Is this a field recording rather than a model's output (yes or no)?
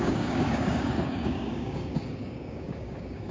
no